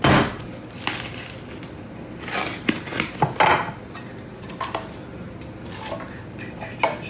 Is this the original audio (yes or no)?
yes